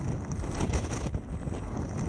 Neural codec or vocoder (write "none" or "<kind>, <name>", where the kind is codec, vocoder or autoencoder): none